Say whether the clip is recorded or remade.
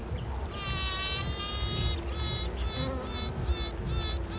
recorded